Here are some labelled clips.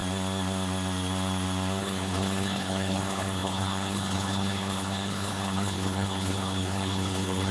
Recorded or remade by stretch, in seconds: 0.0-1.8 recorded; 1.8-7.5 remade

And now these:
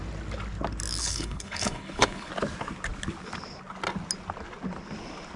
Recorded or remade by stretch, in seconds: 0.0-1.0 recorded; 1.0-2.3 remade; 2.3-5.4 recorded

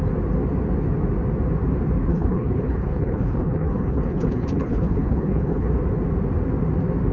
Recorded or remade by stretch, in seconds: 0.0-2.1 recorded; 2.1-5.7 remade; 5.7-7.1 recorded

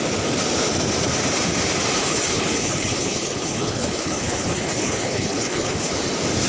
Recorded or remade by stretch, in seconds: 0.0-2.0 recorded; 2.0-5.9 remade; 5.9-6.5 recorded